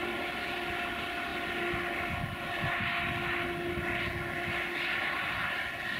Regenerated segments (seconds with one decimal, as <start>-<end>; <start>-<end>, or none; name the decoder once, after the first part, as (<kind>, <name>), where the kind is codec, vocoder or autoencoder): none